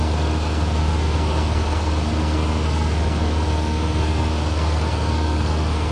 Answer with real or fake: fake